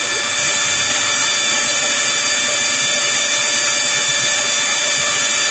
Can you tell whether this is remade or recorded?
recorded